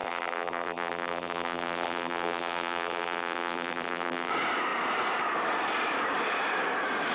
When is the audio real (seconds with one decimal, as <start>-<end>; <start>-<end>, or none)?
4.3-7.1